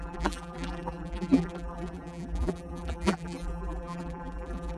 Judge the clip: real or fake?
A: fake